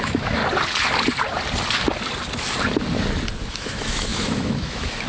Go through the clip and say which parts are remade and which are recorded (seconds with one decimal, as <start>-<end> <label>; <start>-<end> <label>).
0.0-0.4 remade; 0.4-3.5 recorded; 3.5-5.1 remade